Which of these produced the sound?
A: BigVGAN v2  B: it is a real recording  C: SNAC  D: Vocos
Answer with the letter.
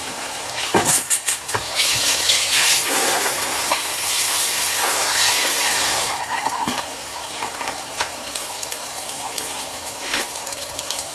C